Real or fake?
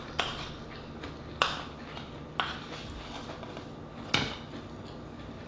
real